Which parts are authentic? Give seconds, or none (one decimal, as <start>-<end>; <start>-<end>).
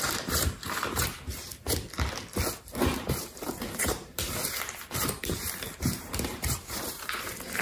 1.5-2.6